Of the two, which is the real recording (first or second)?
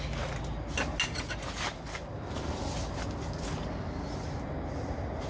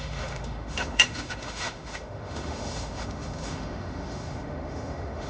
first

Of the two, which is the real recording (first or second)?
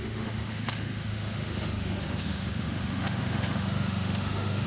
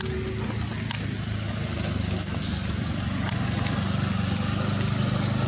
second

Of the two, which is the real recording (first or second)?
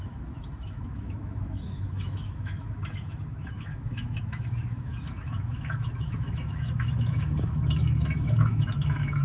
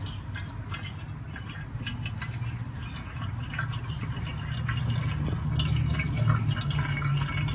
second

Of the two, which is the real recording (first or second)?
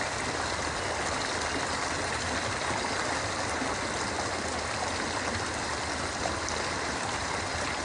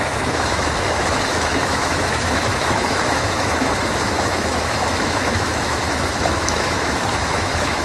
first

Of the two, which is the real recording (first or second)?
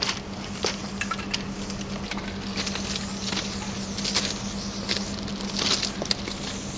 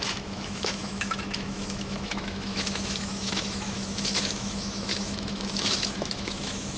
first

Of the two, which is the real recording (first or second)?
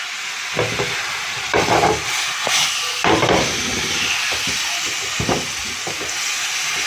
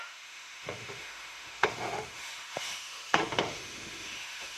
first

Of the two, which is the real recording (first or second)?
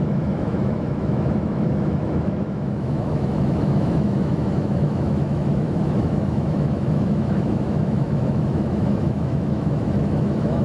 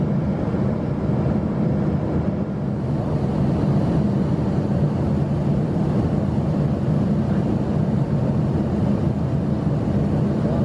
second